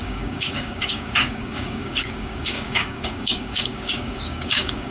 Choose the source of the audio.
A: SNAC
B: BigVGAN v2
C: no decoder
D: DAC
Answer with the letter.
D